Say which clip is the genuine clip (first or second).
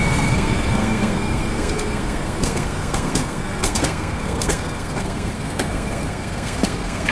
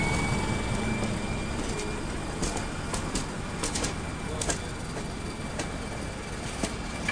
second